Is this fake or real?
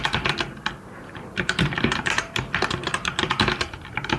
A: fake